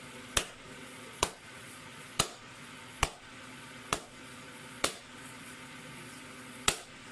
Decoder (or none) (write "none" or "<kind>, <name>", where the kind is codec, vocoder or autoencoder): vocoder, Vocos